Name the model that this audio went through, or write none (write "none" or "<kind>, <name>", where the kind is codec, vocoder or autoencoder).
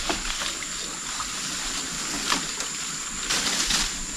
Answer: none